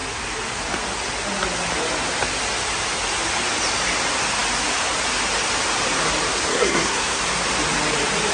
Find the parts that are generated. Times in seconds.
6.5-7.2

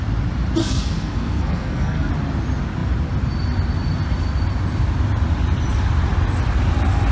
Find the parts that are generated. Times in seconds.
0.6-2.1